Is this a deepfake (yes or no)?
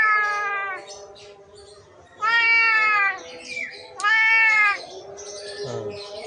no